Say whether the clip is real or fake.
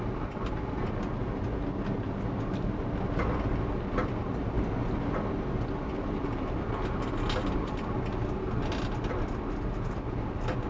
real